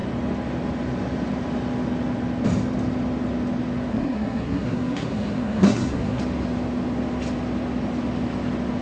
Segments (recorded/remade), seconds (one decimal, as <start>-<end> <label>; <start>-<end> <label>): 0.0-3.9 recorded; 3.9-6.2 remade; 6.2-8.8 recorded